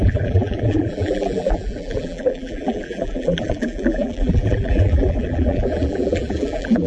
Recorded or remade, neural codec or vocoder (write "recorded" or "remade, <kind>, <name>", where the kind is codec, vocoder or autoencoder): remade, vocoder, BigVGAN v2